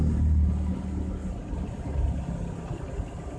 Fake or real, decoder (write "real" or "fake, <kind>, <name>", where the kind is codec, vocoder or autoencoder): real